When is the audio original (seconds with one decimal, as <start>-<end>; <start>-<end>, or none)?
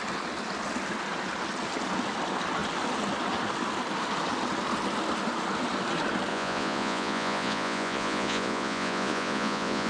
0.0-6.3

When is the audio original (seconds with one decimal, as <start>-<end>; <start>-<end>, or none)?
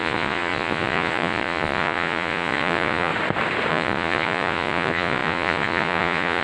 3.1-3.7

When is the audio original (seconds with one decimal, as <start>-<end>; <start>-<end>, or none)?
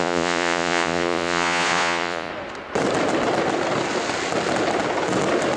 2.3-5.6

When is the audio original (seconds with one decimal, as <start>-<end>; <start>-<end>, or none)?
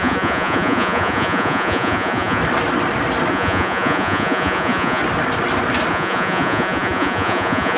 2.4-3.3; 5.0-5.9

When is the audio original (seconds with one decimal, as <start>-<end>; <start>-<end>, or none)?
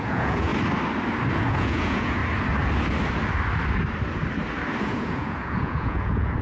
0.5-1.3; 2.2-4.8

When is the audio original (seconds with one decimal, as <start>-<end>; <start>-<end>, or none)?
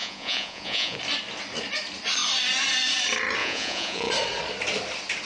1.0-3.4; 4.1-5.3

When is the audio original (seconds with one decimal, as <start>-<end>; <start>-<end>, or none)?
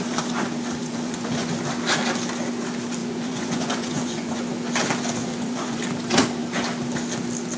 0.0-0.8; 1.6-3.0; 4.4-5.2; 5.8-7.6